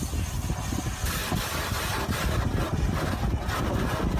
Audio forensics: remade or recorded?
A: recorded